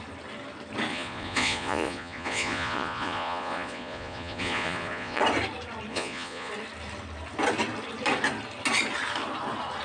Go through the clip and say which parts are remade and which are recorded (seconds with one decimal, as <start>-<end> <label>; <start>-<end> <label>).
0.0-0.9 recorded; 0.9-5.2 remade; 5.2-5.9 recorded; 5.9-6.5 remade; 6.5-9.8 recorded